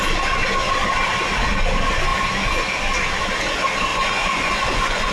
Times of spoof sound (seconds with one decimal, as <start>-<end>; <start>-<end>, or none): 3.9-5.1